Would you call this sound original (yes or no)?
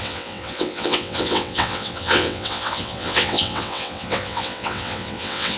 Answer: no